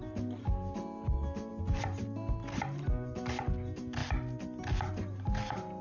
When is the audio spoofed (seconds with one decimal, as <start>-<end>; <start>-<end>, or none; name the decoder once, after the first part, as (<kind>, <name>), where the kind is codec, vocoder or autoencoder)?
0.0-4.0 (vocoder, BigVGAN v2); 4.9-5.8